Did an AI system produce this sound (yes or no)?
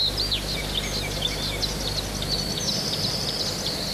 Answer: no